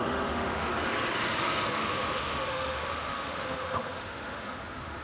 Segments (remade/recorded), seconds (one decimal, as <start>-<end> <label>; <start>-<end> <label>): 0.0-0.7 remade; 0.7-1.4 recorded; 1.4-5.0 remade